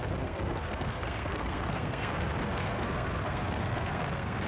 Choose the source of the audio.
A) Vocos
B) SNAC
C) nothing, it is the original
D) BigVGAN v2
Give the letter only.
B